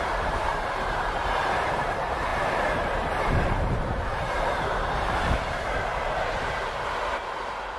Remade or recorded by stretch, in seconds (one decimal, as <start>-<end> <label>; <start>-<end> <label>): 0.0-5.9 remade; 5.9-6.4 recorded; 6.4-7.8 remade